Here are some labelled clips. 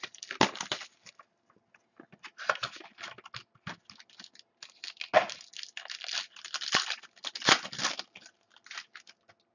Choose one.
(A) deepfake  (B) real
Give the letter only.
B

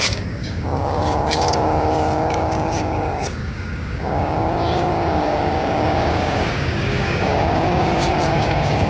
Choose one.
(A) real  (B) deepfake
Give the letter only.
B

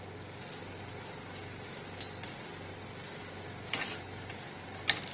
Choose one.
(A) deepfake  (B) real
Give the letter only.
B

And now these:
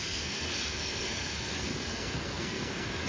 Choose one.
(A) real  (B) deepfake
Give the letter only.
B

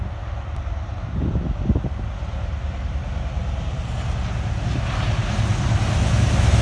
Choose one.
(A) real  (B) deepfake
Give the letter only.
A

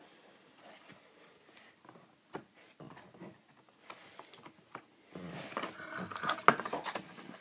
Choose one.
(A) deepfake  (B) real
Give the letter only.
B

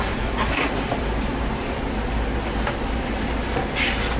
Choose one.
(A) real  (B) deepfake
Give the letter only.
A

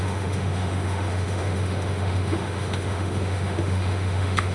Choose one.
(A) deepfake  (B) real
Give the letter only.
A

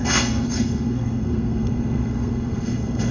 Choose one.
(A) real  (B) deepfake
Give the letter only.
B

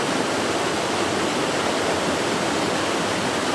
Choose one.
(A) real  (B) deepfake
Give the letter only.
A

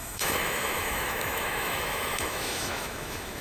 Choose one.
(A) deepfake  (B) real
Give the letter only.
A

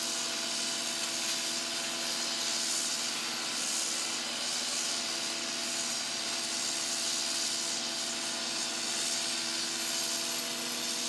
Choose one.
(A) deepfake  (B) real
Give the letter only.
B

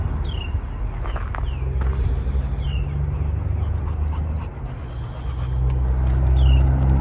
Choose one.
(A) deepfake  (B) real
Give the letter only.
B